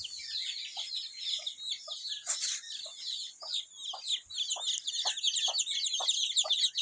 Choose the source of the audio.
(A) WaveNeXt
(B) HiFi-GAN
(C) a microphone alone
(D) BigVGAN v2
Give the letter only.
C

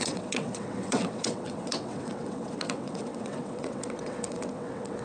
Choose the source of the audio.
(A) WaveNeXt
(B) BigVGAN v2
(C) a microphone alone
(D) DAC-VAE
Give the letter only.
A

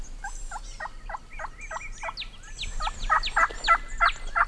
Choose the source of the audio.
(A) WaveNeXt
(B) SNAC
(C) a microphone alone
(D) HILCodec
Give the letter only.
C